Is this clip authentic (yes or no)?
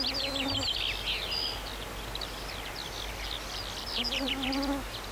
yes